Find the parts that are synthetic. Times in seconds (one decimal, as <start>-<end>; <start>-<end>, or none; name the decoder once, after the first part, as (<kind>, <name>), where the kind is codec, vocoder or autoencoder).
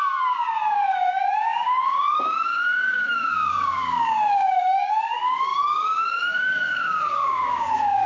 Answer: 0.0-8.1 (codec, DAC)